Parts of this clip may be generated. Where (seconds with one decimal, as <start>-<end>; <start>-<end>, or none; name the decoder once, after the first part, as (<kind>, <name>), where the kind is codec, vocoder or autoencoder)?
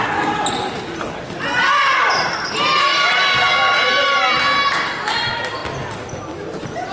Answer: none